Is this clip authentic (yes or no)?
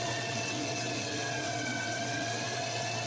no